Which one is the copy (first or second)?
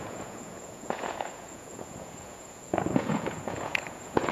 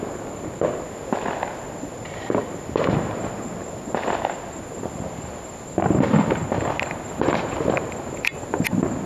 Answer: first